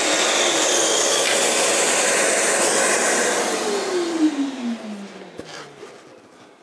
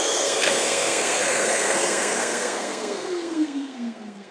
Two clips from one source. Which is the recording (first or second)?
first